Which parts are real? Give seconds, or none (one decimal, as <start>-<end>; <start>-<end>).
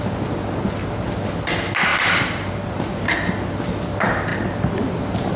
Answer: 0.0-1.9; 2.5-5.4